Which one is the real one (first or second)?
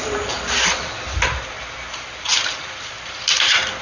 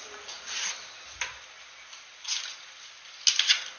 second